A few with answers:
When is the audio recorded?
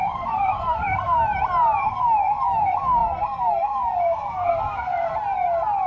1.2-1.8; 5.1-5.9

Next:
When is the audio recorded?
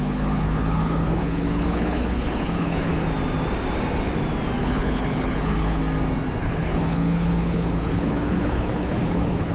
2.9-4.6; 5.8-6.4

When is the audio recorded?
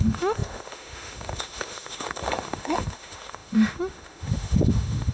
none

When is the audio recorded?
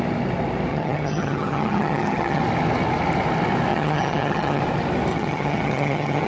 0.0-0.7; 2.4-3.7; 4.6-5.1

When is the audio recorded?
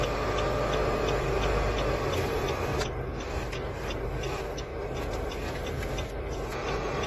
0.0-2.7; 4.1-4.7; 5.9-7.1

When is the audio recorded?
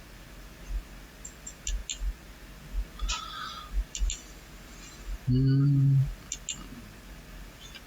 0.0-7.9